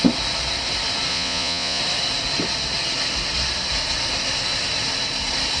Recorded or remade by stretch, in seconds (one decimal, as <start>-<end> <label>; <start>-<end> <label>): 0.0-1.1 recorded; 1.1-1.8 remade; 1.8-5.6 recorded